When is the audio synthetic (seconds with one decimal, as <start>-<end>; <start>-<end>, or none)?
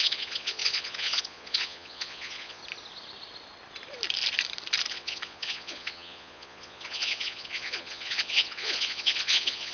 0.0-2.6; 4.9-9.7